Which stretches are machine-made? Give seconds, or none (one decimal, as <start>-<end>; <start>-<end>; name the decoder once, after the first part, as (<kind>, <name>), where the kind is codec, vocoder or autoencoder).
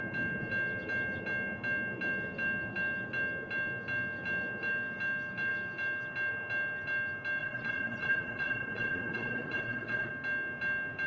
7.4-10.1 (vocoder, Vocos)